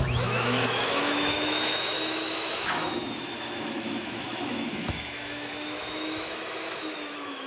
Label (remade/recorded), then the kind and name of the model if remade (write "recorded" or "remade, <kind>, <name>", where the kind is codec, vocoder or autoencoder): remade, autoencoder, DAC-VAE